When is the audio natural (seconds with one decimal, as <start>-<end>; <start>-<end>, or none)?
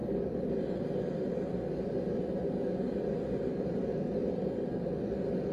0.0-4.2; 4.7-5.5